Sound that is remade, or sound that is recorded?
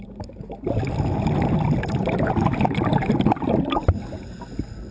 recorded